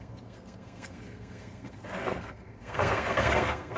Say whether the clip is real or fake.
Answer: fake